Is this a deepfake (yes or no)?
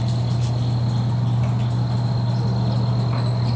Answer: no